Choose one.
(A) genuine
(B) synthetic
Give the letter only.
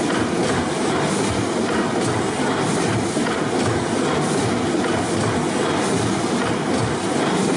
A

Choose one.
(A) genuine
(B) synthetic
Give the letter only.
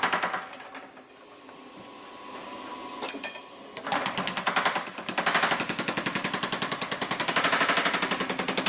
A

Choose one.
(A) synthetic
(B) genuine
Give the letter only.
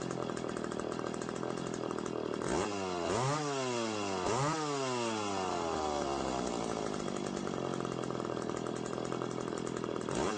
B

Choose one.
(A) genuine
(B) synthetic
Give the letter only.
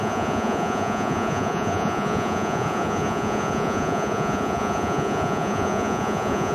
B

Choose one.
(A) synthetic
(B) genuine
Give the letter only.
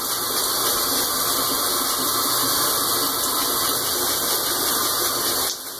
B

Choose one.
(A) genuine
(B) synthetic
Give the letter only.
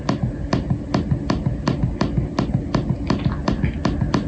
A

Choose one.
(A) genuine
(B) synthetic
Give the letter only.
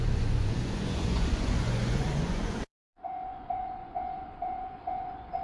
B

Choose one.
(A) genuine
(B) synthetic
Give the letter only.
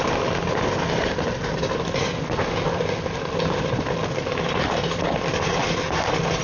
A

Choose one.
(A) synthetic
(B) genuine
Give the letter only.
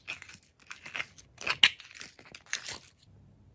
B